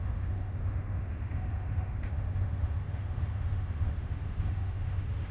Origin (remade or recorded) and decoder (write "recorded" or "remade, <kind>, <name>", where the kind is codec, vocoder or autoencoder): remade, autoencoder, DAC-VAE